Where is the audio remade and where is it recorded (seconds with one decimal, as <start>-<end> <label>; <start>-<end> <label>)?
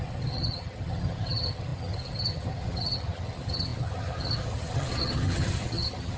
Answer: 0.0-6.2 remade